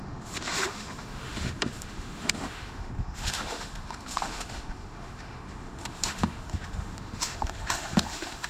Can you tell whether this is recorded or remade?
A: remade